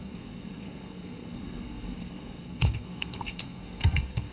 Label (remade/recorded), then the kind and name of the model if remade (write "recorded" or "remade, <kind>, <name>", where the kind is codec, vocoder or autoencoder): remade, codec, SNAC